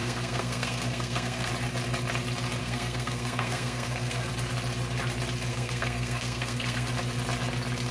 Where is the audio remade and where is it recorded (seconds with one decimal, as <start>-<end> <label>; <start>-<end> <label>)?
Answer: 0.0-1.5 remade; 1.5-2.6 recorded; 2.6-4.3 remade; 4.3-5.5 recorded; 5.5-6.9 remade; 6.9-7.9 recorded